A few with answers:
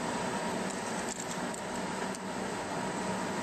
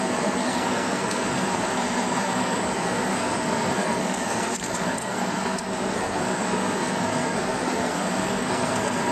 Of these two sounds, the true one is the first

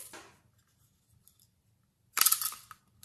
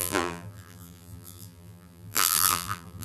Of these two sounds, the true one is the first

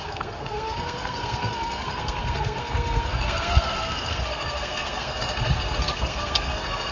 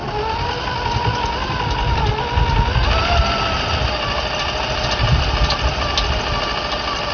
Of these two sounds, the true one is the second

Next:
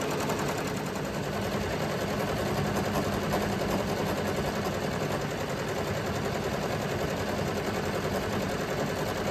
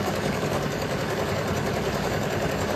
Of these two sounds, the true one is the first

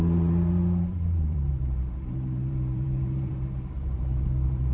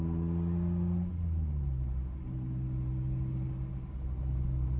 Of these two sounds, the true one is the second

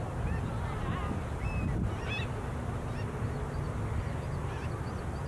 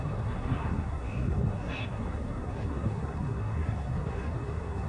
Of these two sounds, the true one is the first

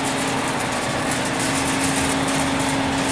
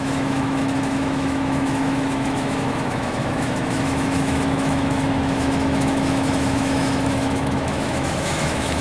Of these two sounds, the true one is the first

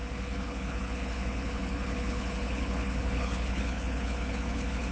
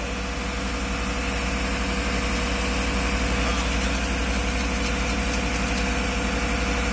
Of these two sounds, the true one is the second